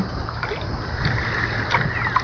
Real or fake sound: real